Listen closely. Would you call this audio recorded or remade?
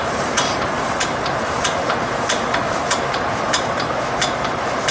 remade